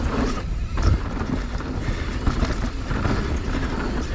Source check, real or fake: real